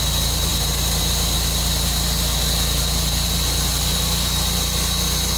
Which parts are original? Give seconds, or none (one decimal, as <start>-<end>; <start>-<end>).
0.0-5.4